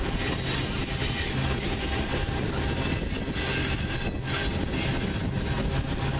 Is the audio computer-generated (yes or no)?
no